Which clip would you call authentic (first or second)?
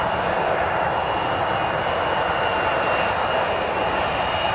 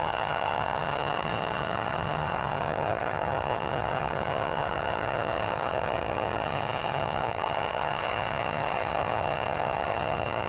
first